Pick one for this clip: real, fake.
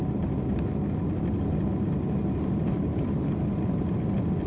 real